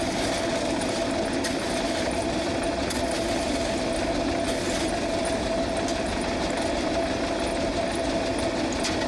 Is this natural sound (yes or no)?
yes